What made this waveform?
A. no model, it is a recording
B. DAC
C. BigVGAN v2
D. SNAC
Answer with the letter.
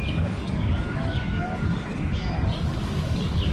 B